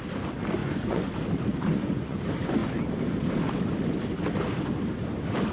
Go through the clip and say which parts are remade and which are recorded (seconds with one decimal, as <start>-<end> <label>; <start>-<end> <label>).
0.0-0.6 recorded; 0.6-1.1 remade; 1.1-1.5 recorded; 1.5-2.2 remade; 2.2-5.5 recorded